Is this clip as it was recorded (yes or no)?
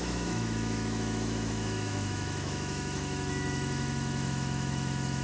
no